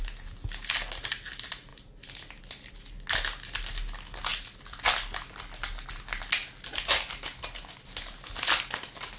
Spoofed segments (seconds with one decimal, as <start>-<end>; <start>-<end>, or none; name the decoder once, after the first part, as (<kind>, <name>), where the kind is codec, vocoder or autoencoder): none